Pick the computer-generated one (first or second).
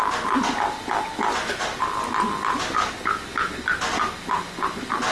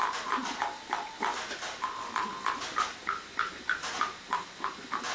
second